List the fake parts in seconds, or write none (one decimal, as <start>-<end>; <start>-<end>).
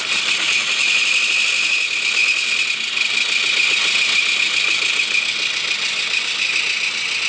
none